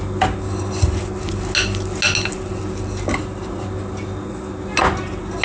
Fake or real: real